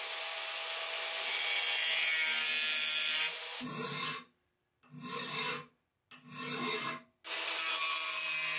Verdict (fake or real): real